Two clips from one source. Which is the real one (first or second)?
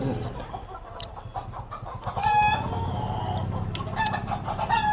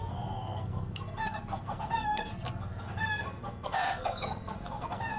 first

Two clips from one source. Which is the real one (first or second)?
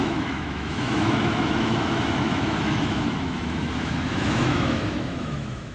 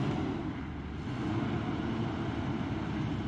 second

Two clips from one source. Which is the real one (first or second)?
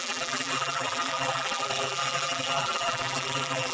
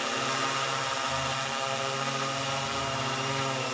second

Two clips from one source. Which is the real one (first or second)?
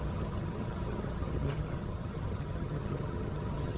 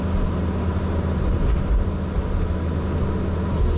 second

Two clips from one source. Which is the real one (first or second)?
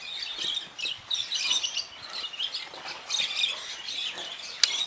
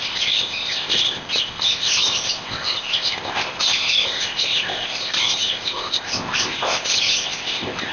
first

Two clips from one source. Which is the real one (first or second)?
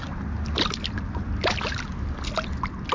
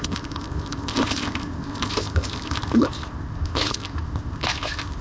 first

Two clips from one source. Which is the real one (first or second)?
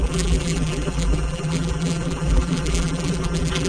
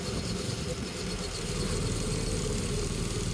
second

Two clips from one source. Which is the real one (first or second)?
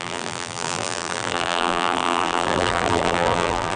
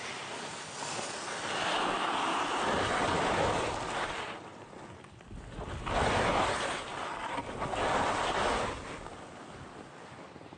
second